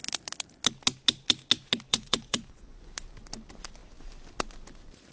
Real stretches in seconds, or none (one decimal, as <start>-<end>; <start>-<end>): 0.0-1.9; 2.9-5.1